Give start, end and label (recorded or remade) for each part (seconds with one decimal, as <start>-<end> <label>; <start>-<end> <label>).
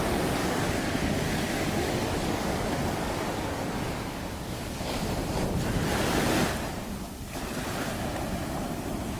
0.0-0.4 recorded; 0.4-5.1 remade; 5.1-9.2 recorded